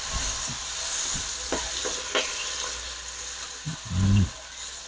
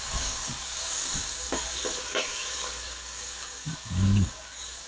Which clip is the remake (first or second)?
second